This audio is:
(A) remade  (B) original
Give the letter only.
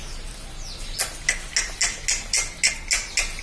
B